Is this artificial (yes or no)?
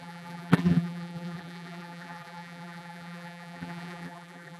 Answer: yes